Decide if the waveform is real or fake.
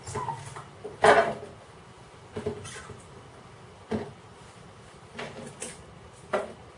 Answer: real